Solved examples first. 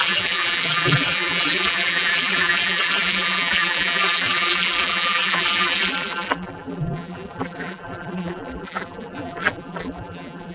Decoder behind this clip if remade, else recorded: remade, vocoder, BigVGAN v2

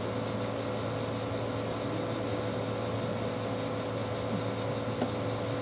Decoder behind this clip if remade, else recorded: recorded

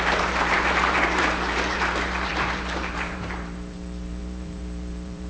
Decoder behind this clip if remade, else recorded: remade, vocoder, BigVGAN v2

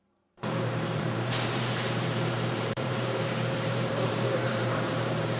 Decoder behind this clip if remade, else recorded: remade, vocoder, BigVGAN v2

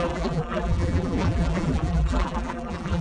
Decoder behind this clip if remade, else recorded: remade, vocoder, BigVGAN v2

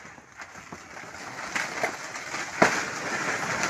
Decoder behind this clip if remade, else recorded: recorded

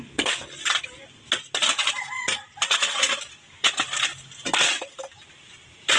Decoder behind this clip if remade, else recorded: recorded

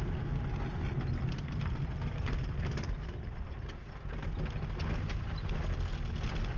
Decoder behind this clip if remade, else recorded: recorded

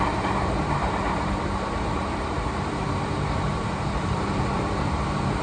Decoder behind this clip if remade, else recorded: remade, vocoder, BigVGAN v2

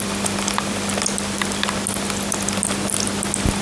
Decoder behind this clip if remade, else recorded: recorded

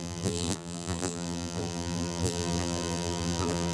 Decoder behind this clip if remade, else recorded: remade, vocoder, BigVGAN v2